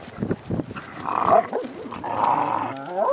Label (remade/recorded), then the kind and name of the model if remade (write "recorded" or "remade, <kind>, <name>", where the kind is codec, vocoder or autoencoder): recorded